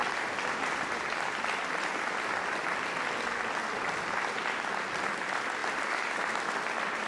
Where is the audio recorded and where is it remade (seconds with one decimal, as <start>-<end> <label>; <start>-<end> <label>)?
0.0-7.1 recorded